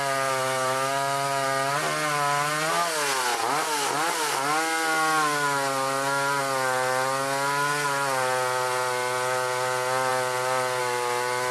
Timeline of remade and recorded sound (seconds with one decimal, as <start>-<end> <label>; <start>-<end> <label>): 0.0-11.5 recorded